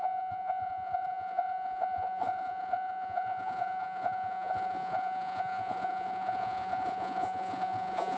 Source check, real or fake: fake